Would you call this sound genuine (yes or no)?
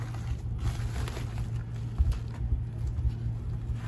yes